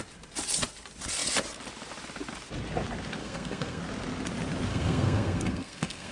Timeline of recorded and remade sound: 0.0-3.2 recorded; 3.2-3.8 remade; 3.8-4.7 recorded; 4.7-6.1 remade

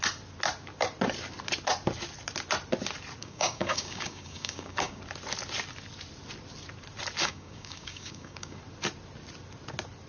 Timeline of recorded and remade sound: 0.0-3.2 recorded; 3.2-5.0 remade; 5.0-7.2 recorded; 7.2-8.6 remade; 8.6-10.1 recorded

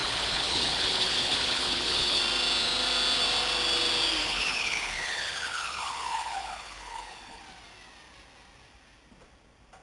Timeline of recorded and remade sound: 0.0-2.2 remade; 2.2-4.2 recorded; 4.2-7.4 remade; 7.4-9.8 recorded

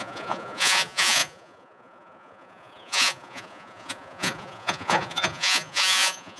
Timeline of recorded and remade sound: 0.0-6.4 remade

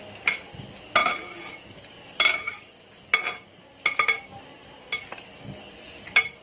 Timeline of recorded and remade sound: 0.0-6.4 recorded

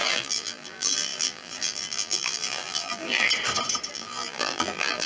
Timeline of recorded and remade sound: 0.0-3.3 remade; 3.3-3.9 recorded; 3.9-5.1 remade

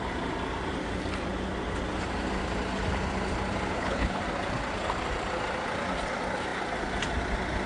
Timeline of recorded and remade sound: 0.0-3.7 recorded; 3.7-4.2 remade; 4.2-7.7 recorded

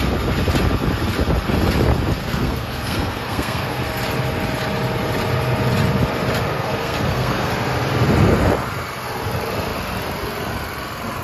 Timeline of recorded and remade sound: 0.0-2.2 recorded; 2.2-3.8 remade; 3.8-6.5 recorded; 6.5-7.5 remade; 7.5-11.2 recorded